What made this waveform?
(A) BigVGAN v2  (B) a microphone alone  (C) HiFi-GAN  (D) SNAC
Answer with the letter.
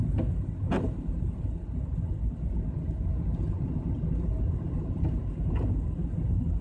B